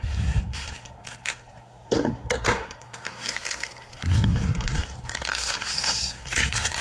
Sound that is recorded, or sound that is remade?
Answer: remade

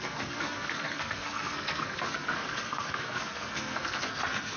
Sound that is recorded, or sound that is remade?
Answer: remade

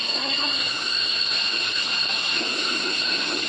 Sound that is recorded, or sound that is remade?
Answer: remade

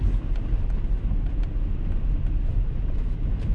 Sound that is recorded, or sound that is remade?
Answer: recorded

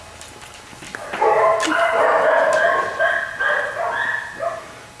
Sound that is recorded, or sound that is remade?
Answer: recorded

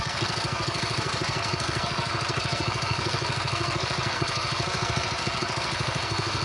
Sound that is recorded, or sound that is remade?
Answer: remade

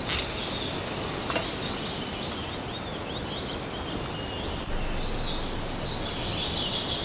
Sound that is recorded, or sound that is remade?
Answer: recorded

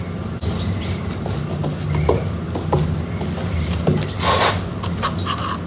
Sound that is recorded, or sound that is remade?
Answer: recorded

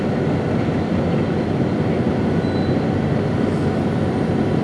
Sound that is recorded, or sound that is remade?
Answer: recorded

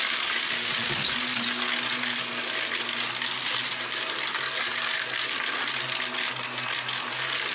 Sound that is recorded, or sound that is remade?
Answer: recorded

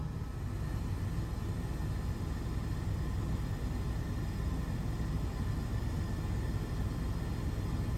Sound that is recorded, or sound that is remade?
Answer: recorded